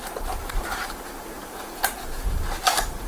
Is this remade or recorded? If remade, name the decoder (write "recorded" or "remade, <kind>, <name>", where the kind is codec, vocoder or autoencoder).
remade, vocoder, BigVGAN v2